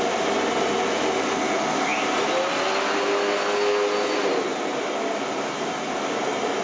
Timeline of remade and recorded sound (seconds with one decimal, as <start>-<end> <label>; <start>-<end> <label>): 0.0-6.6 recorded